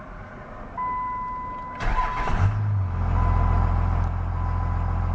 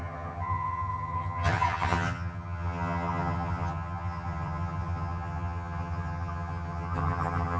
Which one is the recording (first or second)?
first